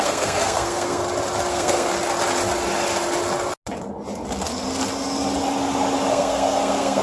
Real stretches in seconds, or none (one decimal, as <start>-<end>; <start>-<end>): 1.0-1.5; 1.9-6.1